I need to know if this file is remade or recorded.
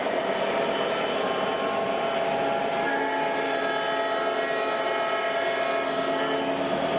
recorded